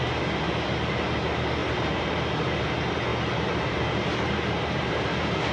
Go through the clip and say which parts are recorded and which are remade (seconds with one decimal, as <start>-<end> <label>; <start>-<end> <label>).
0.0-1.6 recorded; 1.6-2.6 remade; 2.6-3.1 recorded; 3.1-5.1 remade; 5.1-5.5 recorded